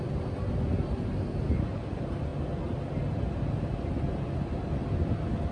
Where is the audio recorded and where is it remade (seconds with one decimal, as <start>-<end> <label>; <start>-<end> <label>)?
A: 0.0-5.5 recorded